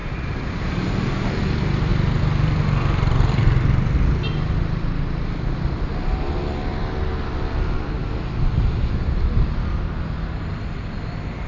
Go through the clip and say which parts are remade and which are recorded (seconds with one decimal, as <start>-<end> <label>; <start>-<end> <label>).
0.0-0.9 remade; 0.9-1.9 recorded; 1.9-4.2 remade; 4.2-11.5 recorded